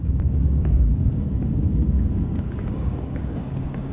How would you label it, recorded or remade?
remade